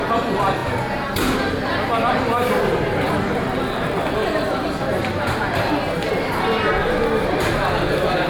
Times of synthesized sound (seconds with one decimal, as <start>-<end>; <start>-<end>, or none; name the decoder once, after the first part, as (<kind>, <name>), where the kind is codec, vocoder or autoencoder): none